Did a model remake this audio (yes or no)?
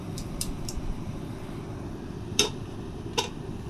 yes